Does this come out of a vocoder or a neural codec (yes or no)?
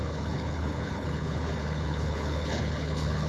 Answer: yes